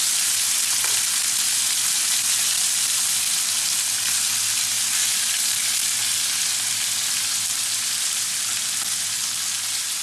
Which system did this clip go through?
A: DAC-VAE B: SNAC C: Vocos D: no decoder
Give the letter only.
D